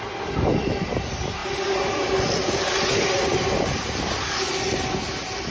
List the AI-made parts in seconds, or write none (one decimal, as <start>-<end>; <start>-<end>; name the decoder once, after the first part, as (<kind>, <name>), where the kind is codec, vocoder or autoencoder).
none